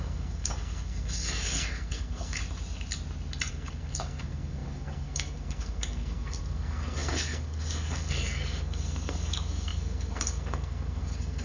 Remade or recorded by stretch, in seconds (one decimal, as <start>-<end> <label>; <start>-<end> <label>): 0.0-2.4 remade; 2.4-3.5 recorded; 3.5-11.4 remade